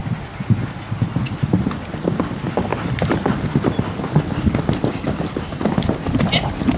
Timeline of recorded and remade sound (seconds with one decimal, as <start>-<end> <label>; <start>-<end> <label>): 0.0-6.8 recorded